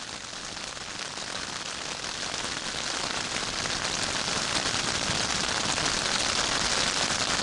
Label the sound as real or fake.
real